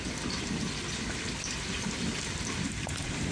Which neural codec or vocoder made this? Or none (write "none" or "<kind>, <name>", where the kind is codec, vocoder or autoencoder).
none